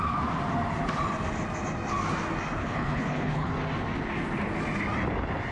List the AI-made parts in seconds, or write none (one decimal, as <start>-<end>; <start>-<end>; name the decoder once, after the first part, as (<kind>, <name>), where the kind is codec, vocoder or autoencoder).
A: 2.6-3.5 (codec, HILCodec)